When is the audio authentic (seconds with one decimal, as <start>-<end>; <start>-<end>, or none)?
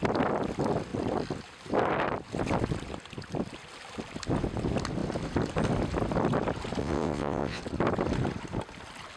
0.0-6.8; 7.6-9.2